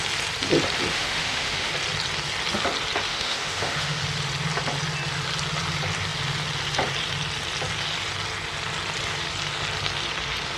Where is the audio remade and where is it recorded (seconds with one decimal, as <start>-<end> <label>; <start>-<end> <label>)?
0.0-0.9 recorded; 0.9-1.7 remade; 1.7-3.1 recorded; 3.1-4.0 remade; 4.0-10.6 recorded